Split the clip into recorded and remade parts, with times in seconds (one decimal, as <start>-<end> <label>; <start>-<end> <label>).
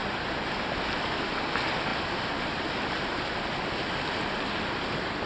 0.0-5.3 recorded